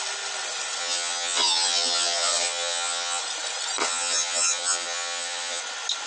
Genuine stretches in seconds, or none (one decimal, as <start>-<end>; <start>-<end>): 0.0-0.8; 3.2-3.8; 5.6-6.1